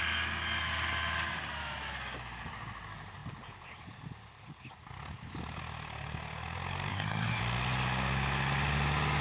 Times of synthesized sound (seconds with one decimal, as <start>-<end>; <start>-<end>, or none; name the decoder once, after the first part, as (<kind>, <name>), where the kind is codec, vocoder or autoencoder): 6.9-7.4 (codec, SNAC)